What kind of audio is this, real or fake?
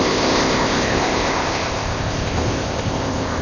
fake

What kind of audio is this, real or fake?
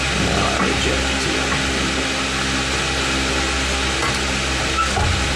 real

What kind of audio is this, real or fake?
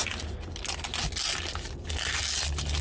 real